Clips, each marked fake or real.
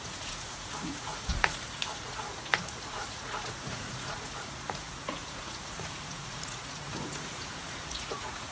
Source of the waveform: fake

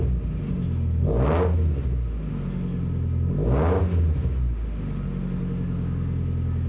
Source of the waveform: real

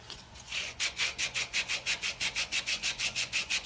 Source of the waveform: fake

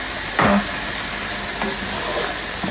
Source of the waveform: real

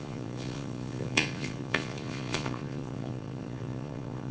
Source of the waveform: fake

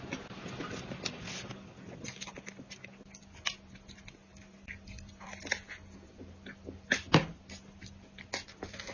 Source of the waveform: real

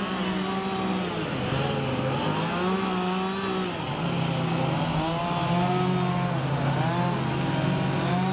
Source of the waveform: real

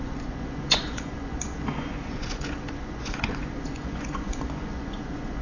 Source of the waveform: fake